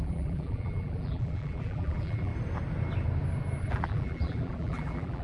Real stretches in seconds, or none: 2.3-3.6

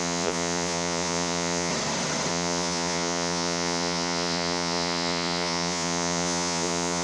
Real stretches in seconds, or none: 1.7-2.3

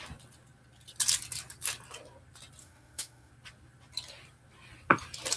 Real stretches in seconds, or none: 0.0-2.6; 3.3-5.4